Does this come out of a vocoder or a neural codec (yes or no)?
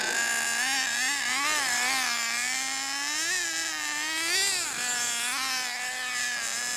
no